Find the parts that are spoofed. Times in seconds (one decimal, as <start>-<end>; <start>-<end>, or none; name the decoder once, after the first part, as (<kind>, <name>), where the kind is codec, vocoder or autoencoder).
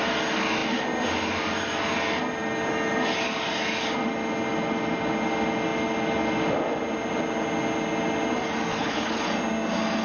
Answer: 8.7-9.3 (codec, HILCodec)